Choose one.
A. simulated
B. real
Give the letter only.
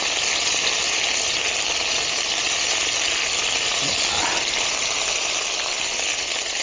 B